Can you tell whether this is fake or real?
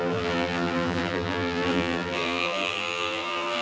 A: fake